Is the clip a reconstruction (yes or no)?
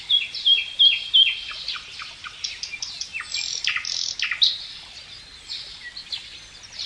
no